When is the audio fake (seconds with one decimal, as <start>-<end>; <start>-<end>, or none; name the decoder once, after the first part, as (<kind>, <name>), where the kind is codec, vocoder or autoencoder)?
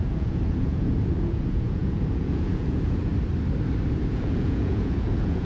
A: 0.0-3.1 (vocoder, Vocos); 4.1-5.5